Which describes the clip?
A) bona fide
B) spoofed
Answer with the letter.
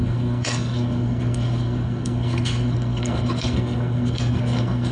B